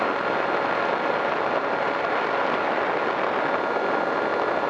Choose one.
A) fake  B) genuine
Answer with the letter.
B